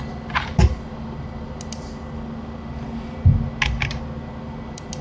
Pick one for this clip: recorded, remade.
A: recorded